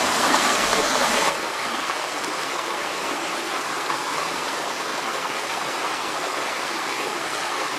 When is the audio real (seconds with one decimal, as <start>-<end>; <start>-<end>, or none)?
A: none

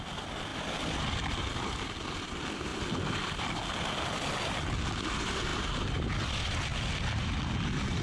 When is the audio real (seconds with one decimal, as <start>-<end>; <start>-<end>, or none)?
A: 0.0-8.0

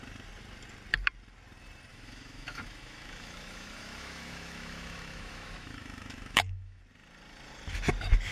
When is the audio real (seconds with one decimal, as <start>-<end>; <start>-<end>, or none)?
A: 0.0-1.9; 6.8-8.3